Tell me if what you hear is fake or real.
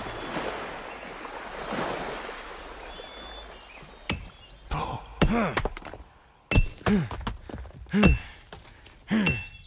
real